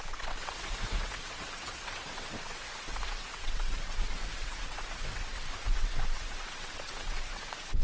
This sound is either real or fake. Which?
fake